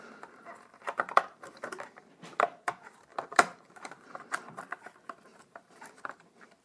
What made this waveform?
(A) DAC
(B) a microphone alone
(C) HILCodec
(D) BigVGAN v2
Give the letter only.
D